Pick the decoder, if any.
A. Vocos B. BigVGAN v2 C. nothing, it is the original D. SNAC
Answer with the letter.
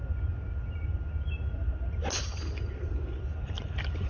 C